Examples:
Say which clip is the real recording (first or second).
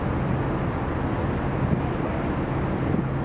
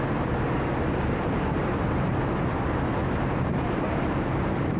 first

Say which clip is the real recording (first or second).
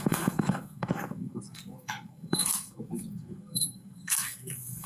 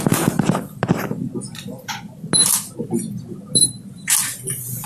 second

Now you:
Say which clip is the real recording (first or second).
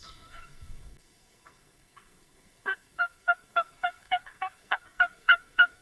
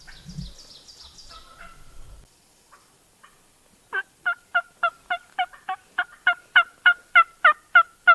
second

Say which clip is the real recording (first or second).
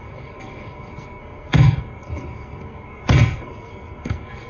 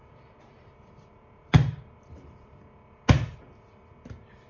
second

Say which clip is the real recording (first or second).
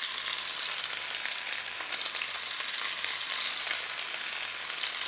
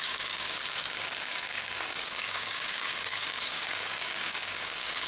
first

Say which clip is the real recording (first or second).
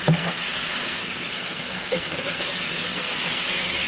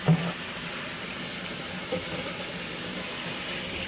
second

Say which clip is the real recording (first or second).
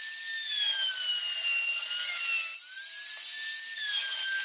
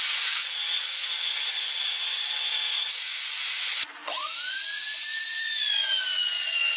first